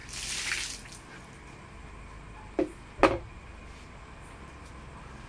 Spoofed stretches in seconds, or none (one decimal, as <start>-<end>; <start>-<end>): none